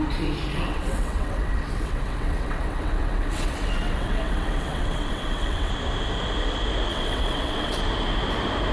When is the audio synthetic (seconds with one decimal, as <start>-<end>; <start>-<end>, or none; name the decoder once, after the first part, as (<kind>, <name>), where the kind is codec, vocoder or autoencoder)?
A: 0.5-5.7 (vocoder, WaveNeXt); 6.9-7.8